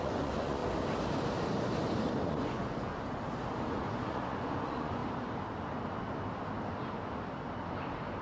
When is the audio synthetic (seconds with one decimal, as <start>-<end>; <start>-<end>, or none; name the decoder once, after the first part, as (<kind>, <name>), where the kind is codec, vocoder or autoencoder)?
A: 0.0-0.6 (vocoder, Vocos); 2.1-2.9; 3.7-5.0